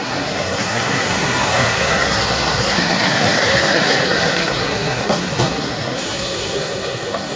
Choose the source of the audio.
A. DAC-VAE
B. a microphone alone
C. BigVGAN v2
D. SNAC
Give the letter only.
D